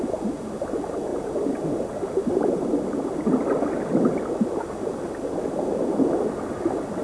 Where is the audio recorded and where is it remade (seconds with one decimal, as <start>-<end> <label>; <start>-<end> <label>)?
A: 0.0-7.0 recorded